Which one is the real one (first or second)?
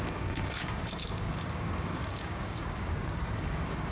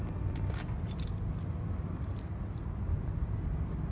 second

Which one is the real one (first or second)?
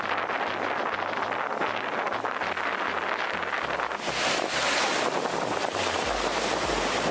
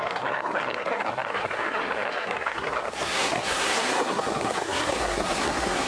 first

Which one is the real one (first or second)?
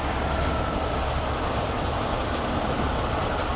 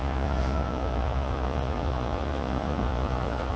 first